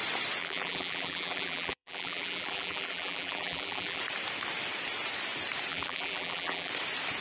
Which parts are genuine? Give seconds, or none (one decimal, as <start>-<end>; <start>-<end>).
0.0-0.4; 4.0-5.7; 6.7-7.2